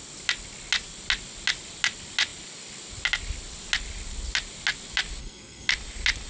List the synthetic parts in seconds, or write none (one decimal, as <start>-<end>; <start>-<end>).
5.2-5.7